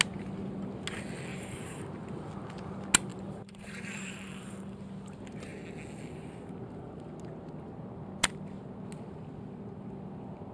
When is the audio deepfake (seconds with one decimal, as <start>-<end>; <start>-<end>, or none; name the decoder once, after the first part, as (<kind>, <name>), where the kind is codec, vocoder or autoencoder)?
1.3-1.8 (vocoder, BigVGAN v2); 3.1-4.8